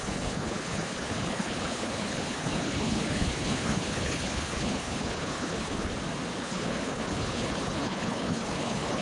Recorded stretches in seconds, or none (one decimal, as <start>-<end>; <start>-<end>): 5.9-6.4